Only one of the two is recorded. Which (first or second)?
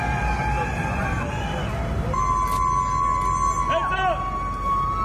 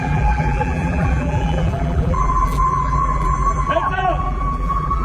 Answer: first